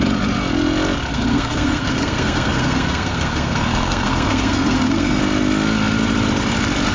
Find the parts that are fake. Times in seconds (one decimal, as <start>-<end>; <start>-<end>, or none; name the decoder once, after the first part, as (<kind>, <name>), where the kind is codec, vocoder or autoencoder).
1.1-5.2 (codec, SNAC)